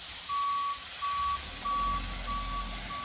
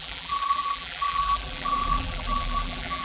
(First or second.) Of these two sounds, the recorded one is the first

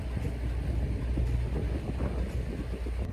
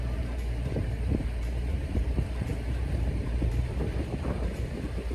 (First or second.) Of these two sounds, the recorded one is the first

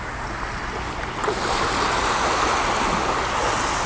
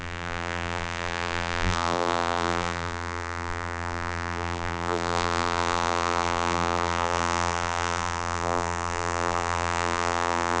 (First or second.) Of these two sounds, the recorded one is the first